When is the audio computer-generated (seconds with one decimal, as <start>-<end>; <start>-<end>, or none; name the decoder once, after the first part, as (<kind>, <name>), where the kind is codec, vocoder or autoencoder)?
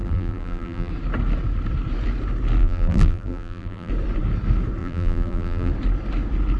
0.0-0.9 (vocoder, BigVGAN v2); 2.6-3.9; 4.8-5.7